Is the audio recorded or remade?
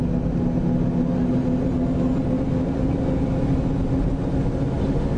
recorded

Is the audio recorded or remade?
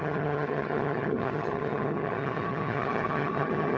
remade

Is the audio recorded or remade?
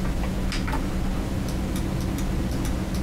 recorded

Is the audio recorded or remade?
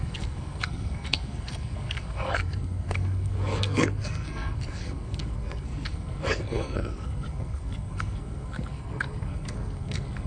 remade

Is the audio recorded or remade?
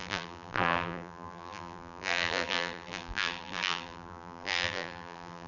remade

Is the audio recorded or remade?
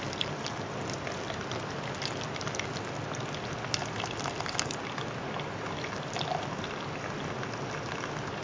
recorded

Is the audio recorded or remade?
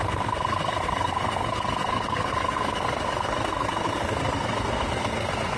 remade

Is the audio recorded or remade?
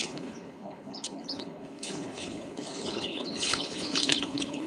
remade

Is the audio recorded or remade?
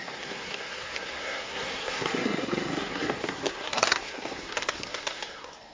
remade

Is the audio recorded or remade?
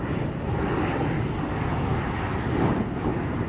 recorded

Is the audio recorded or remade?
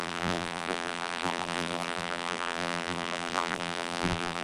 remade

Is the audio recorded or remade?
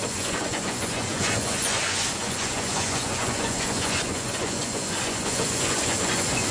remade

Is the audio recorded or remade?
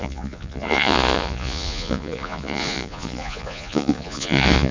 remade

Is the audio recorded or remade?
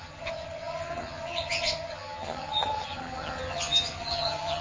remade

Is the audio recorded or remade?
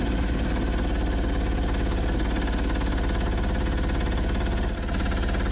recorded